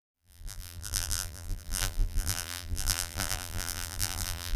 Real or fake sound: fake